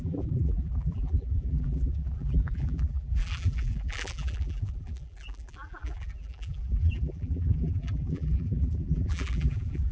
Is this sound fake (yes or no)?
yes